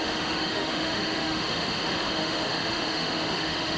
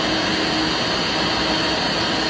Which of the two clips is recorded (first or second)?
second